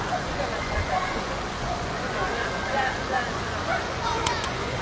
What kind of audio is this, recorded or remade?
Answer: remade